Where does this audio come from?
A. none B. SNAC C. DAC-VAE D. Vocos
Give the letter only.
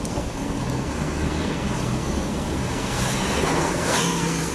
B